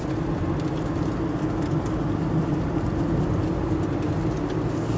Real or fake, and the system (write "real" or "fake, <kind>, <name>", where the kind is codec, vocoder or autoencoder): real